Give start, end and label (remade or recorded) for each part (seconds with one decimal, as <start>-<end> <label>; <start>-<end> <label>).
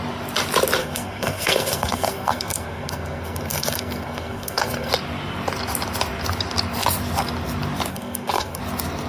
0.0-0.8 recorded; 0.8-4.9 remade; 4.9-7.9 recorded; 7.9-8.6 remade; 8.6-9.1 recorded